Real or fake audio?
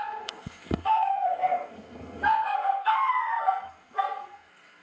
fake